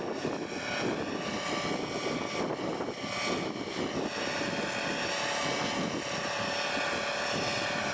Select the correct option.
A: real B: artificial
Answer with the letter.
A